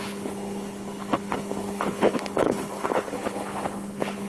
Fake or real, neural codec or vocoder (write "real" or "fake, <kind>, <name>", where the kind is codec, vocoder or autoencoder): fake, codec, HILCodec